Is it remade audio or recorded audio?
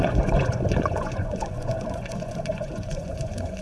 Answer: remade